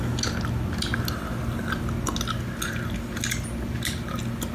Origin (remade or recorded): recorded